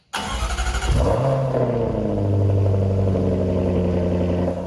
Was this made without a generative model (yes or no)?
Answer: yes